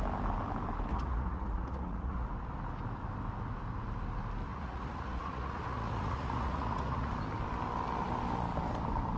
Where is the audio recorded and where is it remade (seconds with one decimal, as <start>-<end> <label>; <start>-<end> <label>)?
0.0-0.9 recorded; 0.9-2.3 remade; 2.3-4.5 recorded; 4.5-7.1 remade; 7.1-9.2 recorded